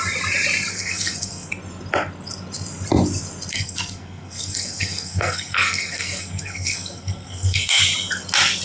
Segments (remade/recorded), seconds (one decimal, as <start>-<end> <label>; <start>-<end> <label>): 0.0-0.7 recorded; 0.7-1.5 remade; 1.5-3.5 recorded; 3.5-7.8 remade; 7.8-8.6 recorded